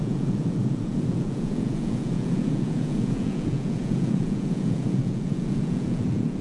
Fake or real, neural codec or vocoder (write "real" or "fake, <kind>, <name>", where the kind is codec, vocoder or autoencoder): fake, vocoder, Vocos